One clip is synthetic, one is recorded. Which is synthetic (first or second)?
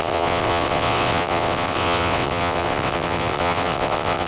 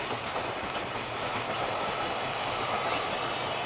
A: first